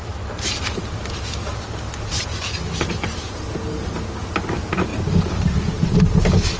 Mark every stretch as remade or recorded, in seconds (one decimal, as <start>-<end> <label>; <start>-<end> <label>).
0.0-2.3 remade; 2.3-4.4 recorded; 4.4-6.6 remade